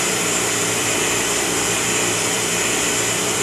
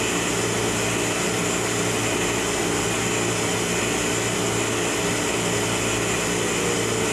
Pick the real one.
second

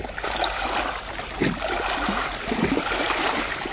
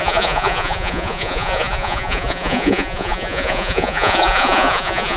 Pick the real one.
first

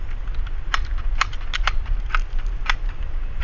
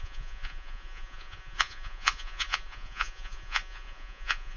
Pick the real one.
first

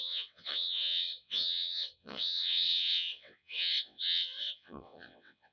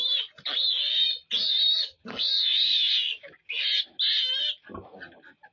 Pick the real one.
second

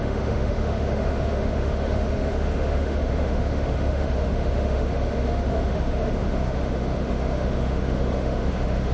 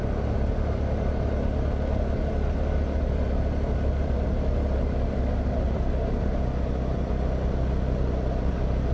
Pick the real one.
second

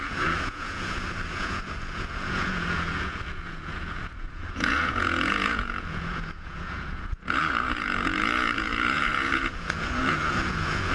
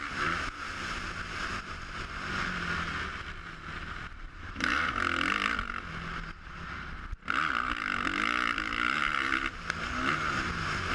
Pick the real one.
second